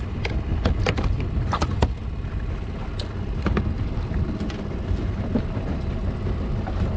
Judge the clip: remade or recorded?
recorded